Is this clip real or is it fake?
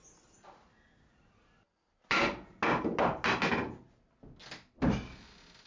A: real